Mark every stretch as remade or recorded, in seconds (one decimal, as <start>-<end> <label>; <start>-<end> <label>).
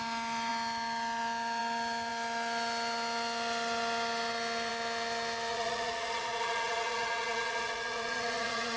0.0-5.5 recorded; 5.5-8.8 remade